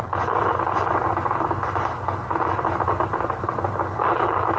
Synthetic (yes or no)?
no